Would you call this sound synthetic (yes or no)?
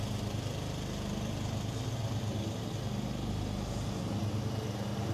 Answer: no